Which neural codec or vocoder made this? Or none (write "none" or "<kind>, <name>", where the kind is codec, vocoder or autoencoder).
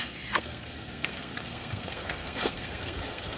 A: codec, SNAC